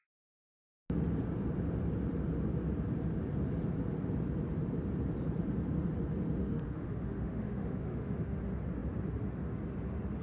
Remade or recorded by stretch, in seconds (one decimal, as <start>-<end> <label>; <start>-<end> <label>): 0.0-6.4 recorded; 6.4-8.4 remade; 8.4-10.2 recorded